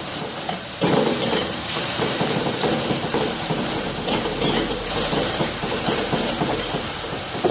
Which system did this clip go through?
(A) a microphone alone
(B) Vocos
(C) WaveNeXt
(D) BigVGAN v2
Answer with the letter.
D